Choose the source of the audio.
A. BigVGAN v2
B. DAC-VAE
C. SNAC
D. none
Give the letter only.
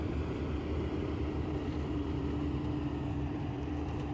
A